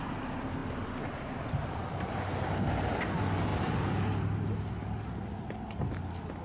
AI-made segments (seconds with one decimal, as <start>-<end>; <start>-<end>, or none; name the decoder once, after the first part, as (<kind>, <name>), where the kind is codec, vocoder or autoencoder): none